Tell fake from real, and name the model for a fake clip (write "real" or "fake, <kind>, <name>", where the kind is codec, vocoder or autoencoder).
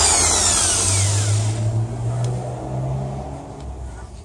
real